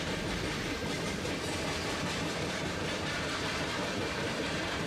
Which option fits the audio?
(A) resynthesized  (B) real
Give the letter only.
A